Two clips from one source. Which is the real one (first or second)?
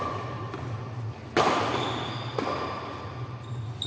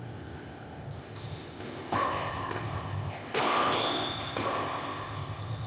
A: first